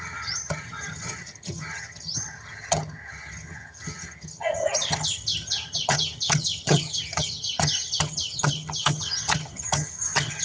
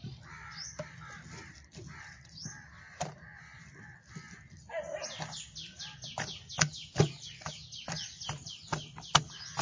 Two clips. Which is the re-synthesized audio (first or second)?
first